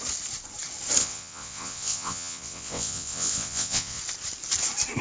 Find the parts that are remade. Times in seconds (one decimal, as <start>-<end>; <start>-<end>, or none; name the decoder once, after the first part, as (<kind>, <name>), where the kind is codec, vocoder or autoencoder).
1.0-4.0 (vocoder, WaveNeXt)